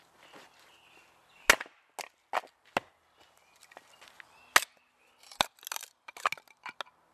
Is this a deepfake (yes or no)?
no